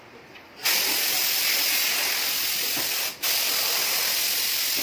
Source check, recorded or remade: recorded